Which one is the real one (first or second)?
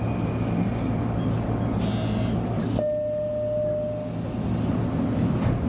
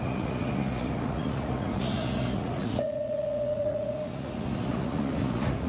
first